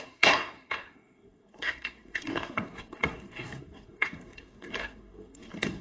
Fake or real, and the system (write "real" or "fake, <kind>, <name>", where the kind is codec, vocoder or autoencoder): fake, codec, SNAC